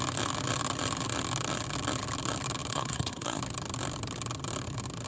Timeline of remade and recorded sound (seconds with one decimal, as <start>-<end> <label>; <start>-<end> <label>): 0.0-2.7 recorded; 2.7-3.4 remade; 3.4-5.1 recorded